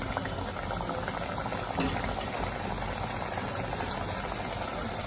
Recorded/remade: recorded